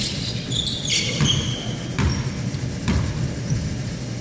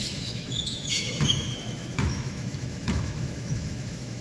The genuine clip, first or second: first